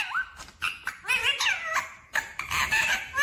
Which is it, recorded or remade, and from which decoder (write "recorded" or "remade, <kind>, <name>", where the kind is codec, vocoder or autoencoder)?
recorded